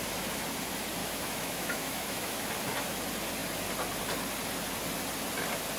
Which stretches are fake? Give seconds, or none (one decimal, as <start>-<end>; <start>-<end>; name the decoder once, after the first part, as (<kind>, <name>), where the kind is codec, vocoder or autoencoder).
1.0-2.5 (autoencoder, DAC-VAE)